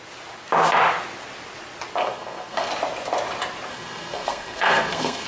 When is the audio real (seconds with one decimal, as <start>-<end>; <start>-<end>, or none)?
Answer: 0.0-2.0; 2.7-3.7